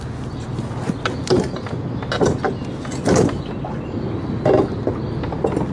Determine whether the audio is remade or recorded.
recorded